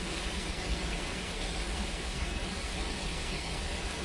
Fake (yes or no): yes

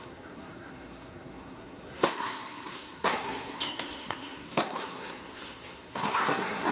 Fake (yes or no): yes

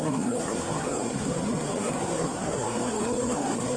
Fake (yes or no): yes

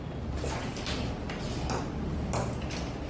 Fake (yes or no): no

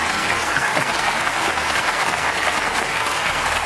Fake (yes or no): yes